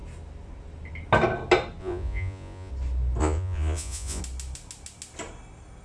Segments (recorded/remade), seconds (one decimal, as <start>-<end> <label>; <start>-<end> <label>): 0.0-1.8 recorded; 1.8-2.7 remade; 2.7-3.2 recorded; 3.2-4.2 remade; 4.2-5.8 recorded